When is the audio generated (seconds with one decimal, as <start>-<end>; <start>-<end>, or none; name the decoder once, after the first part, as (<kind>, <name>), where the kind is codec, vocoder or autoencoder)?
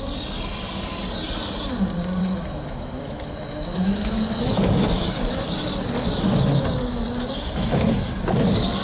2.2-5.0 (autoencoder, DAC-VAE)